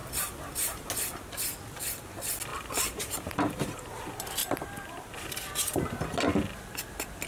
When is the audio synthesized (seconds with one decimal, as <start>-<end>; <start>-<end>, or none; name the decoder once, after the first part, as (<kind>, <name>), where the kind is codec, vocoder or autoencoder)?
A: 0.0-0.9 (vocoder, BigVGAN v2); 2.5-3.9; 4.4-5.1